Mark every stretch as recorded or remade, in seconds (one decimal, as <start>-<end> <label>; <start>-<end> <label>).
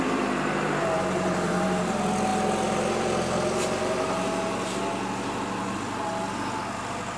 0.0-2.3 remade; 2.3-6.6 recorded; 6.6-7.2 remade